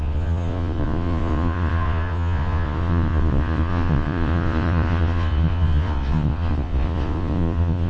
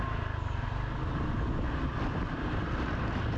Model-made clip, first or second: first